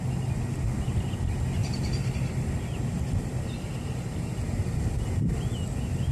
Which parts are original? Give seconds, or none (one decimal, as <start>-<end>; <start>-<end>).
0.0-6.1